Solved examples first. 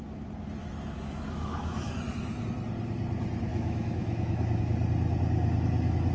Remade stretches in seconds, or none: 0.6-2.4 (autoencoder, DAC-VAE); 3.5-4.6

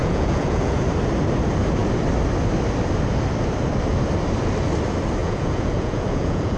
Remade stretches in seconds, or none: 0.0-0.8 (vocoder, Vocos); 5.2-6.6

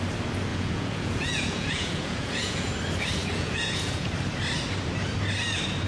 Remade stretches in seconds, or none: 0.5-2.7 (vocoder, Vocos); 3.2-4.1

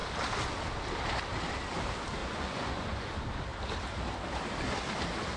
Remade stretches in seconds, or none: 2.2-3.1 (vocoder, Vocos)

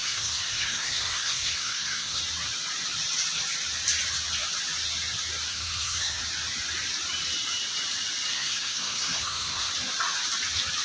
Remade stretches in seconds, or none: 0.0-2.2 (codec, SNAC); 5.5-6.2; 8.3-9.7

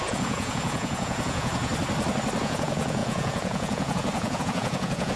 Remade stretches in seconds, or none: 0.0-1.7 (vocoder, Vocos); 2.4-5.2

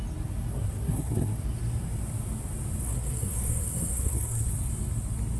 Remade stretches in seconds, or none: 0.5-1.4 (codec, SNAC); 2.8-4.5

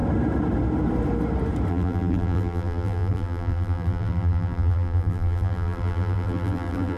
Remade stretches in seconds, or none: 1.7-7.0 (vocoder, BigVGAN v2)